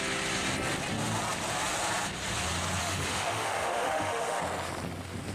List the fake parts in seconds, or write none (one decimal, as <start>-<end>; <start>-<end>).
2.8-4.4